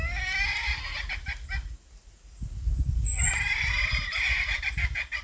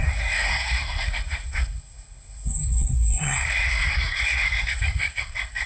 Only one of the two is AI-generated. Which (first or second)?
second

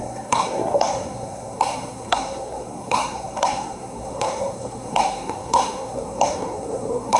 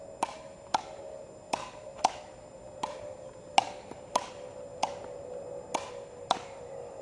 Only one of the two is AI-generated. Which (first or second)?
first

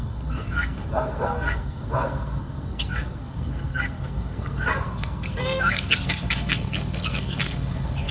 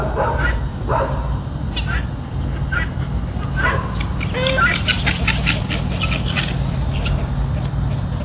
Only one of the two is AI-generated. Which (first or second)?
first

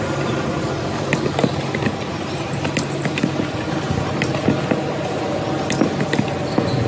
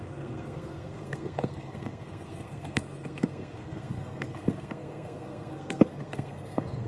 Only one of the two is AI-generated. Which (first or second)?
second